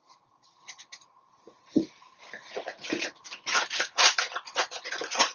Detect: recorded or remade remade